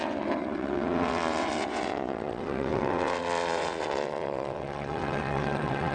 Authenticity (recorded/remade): remade